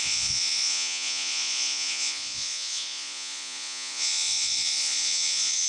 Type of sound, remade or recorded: remade